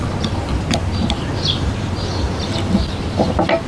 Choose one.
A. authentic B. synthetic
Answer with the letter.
A